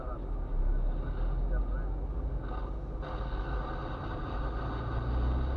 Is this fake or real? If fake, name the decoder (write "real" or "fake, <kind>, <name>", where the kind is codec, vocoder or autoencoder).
real